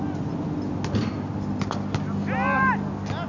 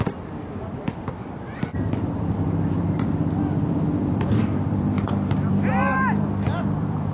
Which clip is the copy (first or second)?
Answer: second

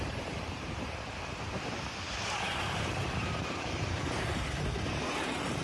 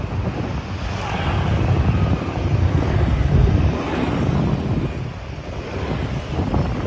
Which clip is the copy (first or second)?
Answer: first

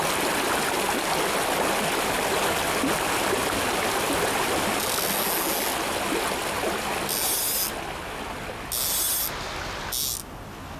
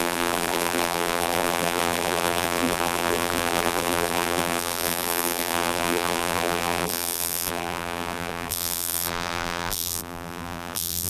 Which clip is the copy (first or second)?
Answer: second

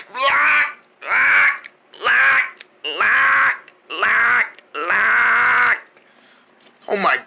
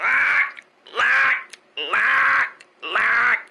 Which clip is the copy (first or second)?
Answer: second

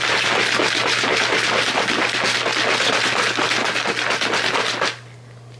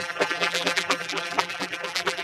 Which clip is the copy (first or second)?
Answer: second